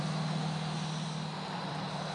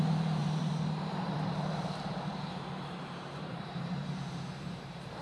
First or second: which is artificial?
second